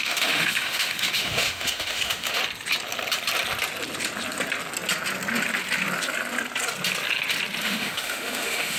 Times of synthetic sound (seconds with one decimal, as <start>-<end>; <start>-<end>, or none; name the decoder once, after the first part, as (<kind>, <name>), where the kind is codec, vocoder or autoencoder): 0.0-2.4 (autoencoder, DAC-VAE); 7.6-8.8